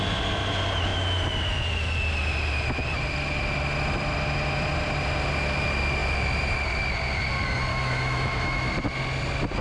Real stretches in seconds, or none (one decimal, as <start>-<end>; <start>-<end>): 0.0-7.7; 8.7-9.6